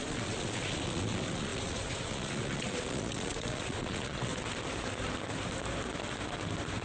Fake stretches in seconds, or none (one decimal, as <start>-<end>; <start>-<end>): 0.0-4.3

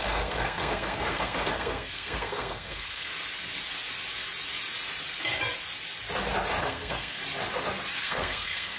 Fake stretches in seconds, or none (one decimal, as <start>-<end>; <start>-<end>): 0.0-3.1; 6.6-7.2; 8.0-8.8

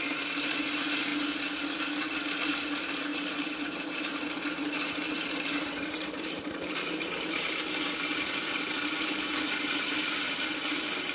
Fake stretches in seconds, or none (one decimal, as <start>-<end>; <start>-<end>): 3.1-7.8

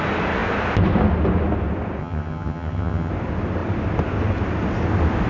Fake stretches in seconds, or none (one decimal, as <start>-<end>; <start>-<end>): 2.0-3.1

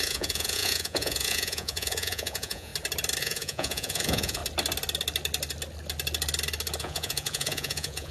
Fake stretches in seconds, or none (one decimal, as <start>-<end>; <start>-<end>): 0.0-2.7; 3.2-4.4; 6.8-8.1

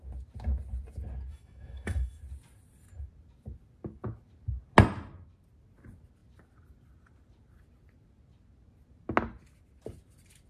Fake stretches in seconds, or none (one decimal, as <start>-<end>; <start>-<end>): 1.3-2.2

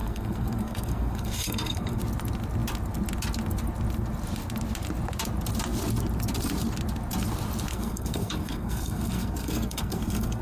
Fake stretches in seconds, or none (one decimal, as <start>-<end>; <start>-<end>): 0.0-2.0; 7.7-10.4